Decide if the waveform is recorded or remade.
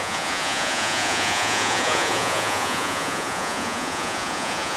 remade